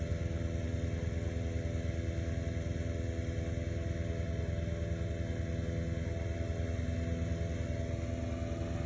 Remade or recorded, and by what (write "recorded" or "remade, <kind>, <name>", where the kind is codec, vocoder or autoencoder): recorded